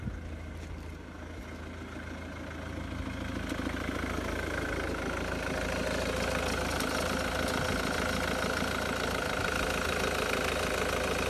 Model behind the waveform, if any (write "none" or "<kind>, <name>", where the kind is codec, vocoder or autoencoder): none